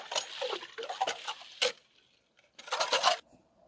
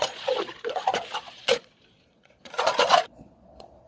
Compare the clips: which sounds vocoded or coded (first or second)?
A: second